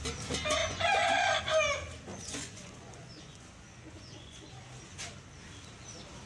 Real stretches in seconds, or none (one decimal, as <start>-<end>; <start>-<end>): 0.0-0.6; 1.4-2.1; 4.5-6.3

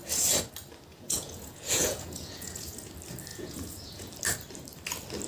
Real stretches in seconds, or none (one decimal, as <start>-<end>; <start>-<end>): 0.0-0.9; 2.9-3.3; 4.1-5.3

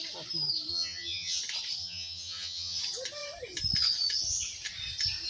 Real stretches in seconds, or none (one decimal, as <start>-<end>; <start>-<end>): 0.0-0.7; 1.4-1.8; 2.8-5.3

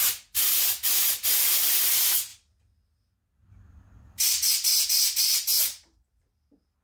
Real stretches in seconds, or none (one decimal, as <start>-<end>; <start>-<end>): 0.0-5.5; 6.3-6.8

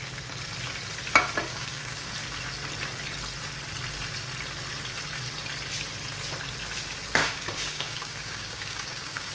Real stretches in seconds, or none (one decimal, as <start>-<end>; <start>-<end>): 0.0-1.5; 2.1-7.2

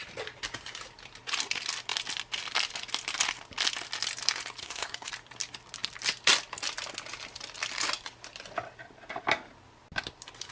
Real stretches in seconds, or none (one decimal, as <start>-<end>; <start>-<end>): 0.0-4.6; 5.1-10.5